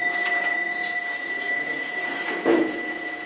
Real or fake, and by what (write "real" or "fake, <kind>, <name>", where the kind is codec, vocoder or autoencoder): fake, vocoder, Vocos